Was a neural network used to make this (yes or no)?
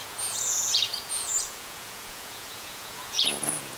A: yes